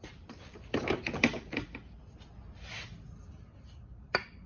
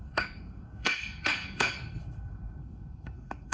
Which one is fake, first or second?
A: second